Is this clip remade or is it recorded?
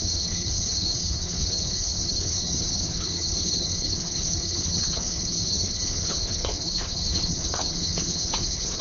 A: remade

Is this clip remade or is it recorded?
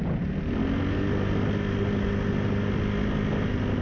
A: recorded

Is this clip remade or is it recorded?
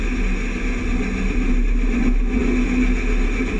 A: recorded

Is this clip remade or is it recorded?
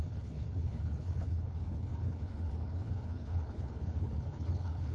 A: remade